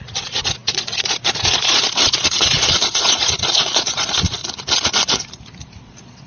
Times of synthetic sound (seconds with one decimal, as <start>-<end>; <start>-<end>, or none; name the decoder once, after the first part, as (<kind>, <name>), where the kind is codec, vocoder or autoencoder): 0.0-4.4 (vocoder, Vocos); 5.8-6.3